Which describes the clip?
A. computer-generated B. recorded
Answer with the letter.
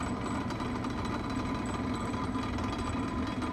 B